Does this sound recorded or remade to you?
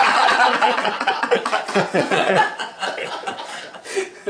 remade